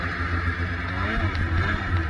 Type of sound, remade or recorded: remade